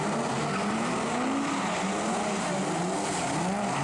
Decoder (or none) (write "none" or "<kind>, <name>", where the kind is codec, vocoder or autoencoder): none